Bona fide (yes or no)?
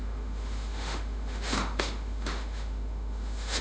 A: no